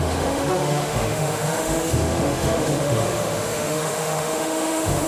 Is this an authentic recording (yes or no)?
no